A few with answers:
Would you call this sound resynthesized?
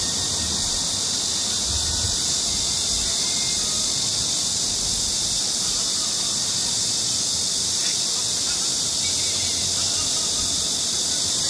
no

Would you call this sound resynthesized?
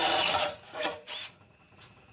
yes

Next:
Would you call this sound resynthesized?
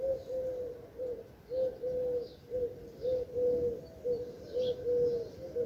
no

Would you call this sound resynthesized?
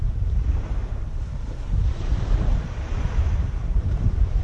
yes